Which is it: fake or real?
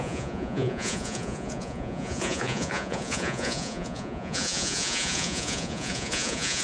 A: fake